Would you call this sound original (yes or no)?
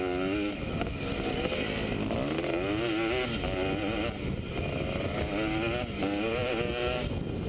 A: yes